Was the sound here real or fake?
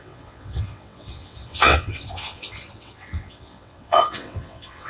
fake